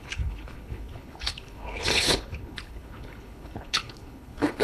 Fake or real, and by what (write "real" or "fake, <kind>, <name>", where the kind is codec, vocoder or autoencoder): fake, codec, HILCodec